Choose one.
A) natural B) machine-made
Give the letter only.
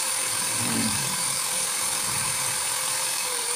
B